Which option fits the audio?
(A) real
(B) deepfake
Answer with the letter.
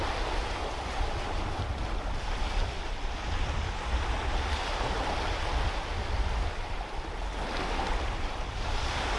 A